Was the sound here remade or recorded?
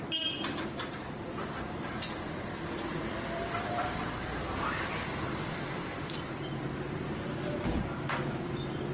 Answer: remade